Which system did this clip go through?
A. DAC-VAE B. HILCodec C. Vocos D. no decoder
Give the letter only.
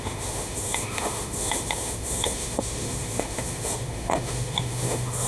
A